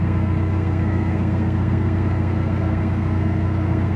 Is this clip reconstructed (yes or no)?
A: yes